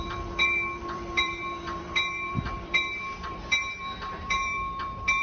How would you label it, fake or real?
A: fake